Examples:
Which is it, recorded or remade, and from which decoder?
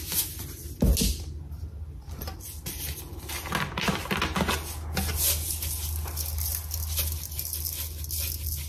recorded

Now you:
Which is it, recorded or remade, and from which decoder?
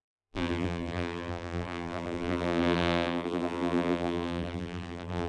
remade, vocoder, BigVGAN v2